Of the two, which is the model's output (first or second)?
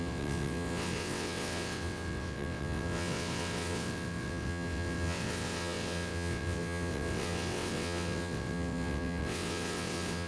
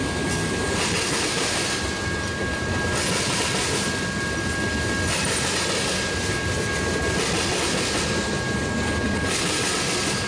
first